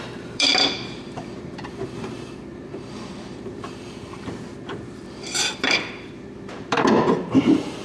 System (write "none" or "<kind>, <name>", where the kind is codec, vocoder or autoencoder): vocoder, BigVGAN v2